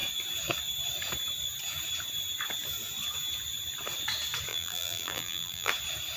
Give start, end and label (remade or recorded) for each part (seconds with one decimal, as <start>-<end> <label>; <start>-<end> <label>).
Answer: 0.0-4.5 recorded; 4.5-5.7 remade; 5.7-6.2 recorded